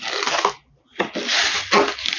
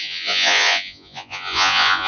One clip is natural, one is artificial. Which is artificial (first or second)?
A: second